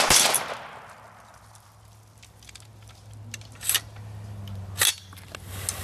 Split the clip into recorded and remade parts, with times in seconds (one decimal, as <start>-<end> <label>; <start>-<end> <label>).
0.0-5.8 recorded